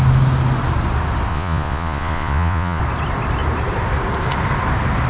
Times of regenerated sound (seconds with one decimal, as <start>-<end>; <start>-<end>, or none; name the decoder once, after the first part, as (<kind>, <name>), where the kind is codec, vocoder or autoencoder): 1.3-2.8 (vocoder, Vocos)